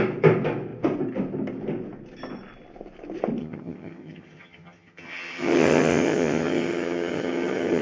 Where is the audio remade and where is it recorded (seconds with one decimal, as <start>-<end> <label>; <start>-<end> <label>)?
0.0-3.4 recorded; 3.4-7.8 remade

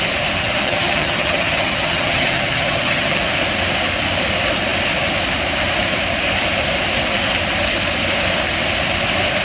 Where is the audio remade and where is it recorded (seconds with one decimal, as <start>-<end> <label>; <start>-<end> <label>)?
0.0-0.4 recorded; 0.4-3.2 remade; 3.2-9.4 recorded

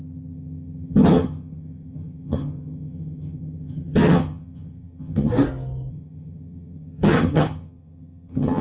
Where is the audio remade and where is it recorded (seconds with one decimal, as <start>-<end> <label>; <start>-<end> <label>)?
0.0-5.3 remade; 5.3-5.9 recorded; 5.9-8.6 remade

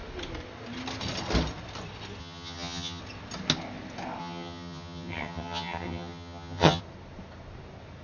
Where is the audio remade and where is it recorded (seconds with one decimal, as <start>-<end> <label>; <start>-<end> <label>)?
0.0-2.2 recorded; 2.2-3.0 remade; 3.0-4.2 recorded; 4.2-6.8 remade; 6.8-8.0 recorded

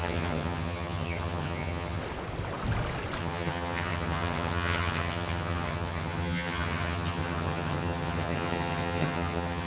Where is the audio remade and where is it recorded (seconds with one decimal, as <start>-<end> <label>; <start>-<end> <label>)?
0.0-2.0 remade; 2.0-3.2 recorded; 3.2-9.7 remade

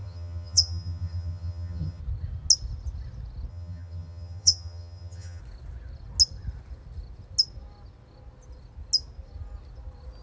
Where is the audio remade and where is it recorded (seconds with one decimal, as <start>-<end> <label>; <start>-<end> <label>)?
0.0-2.0 remade; 2.0-3.5 recorded; 3.5-5.4 remade; 5.4-10.2 recorded